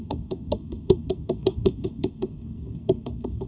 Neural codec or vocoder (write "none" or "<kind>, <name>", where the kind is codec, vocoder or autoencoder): codec, SNAC